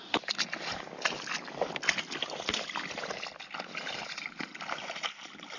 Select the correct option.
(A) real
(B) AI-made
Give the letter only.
A